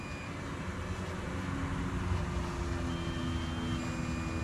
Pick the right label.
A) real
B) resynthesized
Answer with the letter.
A